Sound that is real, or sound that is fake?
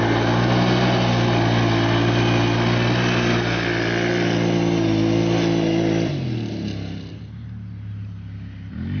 real